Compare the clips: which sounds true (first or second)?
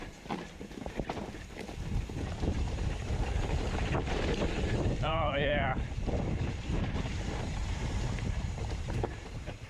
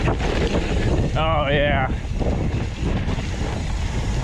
second